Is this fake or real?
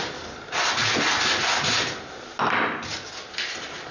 real